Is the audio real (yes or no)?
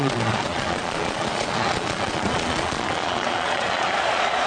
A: no